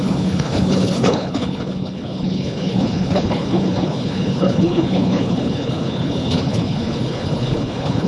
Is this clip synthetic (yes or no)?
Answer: yes